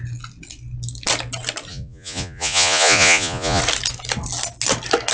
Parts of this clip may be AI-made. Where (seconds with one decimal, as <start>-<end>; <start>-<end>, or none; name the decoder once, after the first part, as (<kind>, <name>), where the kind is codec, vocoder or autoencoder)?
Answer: 1.7-3.6 (vocoder, Vocos)